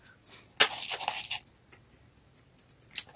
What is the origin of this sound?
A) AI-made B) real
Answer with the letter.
B